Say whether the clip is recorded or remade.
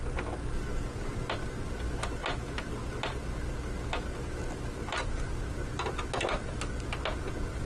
recorded